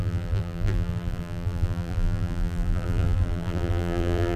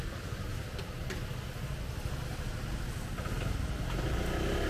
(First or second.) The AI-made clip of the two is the first